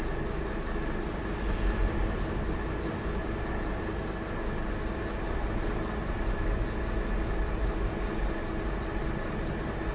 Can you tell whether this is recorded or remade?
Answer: recorded